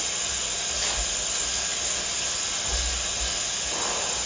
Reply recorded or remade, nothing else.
recorded